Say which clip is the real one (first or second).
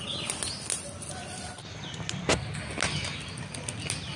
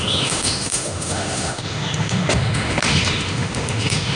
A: first